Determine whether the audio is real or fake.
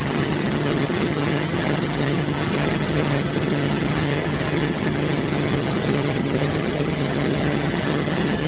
fake